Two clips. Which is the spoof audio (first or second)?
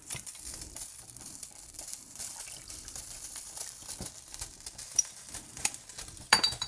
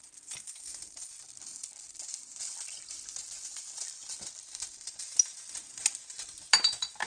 first